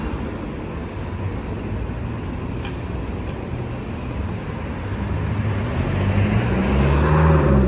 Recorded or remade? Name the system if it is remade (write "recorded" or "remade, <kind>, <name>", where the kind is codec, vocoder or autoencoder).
recorded